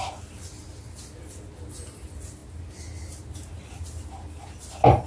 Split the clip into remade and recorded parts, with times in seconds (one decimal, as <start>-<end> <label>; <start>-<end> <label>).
0.0-5.1 recorded